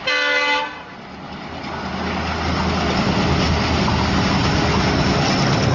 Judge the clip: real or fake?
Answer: real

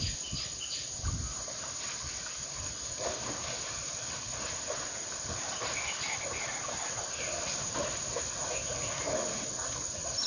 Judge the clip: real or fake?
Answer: real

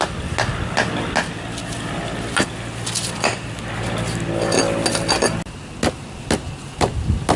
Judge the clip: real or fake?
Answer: real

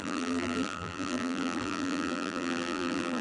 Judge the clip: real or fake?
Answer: fake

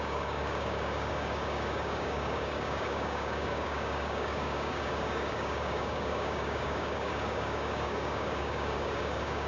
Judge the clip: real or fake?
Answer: fake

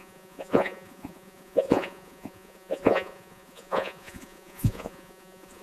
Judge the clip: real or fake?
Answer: fake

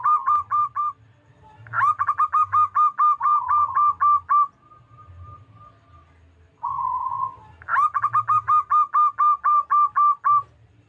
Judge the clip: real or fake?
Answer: real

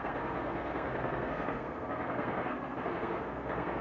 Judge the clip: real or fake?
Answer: fake